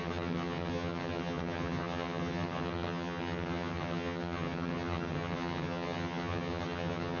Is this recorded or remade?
remade